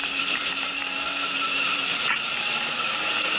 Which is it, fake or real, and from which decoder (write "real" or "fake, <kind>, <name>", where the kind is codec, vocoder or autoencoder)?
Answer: fake, vocoder, BigVGAN v2